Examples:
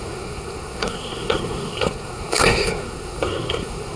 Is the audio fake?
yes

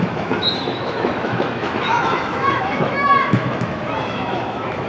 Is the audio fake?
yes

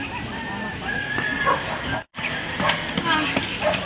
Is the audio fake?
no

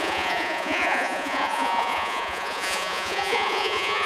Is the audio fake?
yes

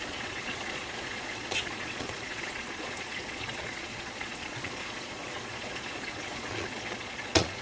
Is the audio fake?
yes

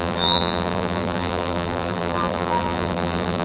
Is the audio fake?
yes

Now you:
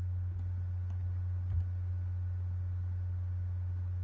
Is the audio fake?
no